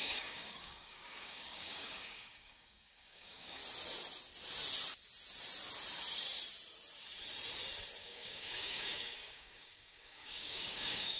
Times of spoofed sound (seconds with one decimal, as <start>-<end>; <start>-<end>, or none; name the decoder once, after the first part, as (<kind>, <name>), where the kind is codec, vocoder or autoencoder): 0.0-3.6 (codec, DAC); 8.0-11.2